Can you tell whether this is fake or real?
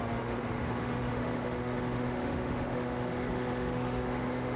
fake